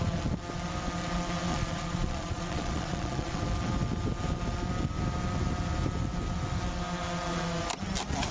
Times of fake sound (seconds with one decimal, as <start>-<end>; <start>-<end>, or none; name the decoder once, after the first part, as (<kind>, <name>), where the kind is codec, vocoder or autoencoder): 1.5-3.4 (vocoder, Vocos)